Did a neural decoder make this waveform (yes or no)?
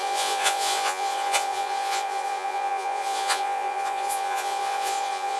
yes